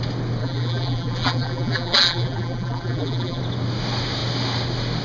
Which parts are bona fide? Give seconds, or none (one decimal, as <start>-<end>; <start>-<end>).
0.0-0.4; 3.4-5.0